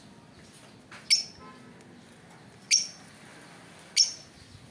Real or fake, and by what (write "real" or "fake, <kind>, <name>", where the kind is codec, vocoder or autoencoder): real